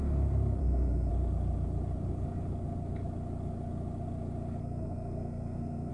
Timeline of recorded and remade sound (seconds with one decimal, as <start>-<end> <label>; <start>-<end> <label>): 0.0-0.6 recorded; 0.6-1.1 remade; 1.1-4.6 recorded; 4.6-5.9 remade